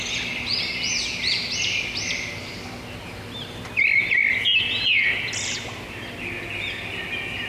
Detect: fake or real real